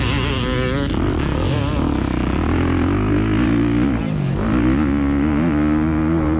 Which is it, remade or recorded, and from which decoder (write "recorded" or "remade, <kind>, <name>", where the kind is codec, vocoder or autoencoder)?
recorded